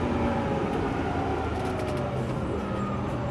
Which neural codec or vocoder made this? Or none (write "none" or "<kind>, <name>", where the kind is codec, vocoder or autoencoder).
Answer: none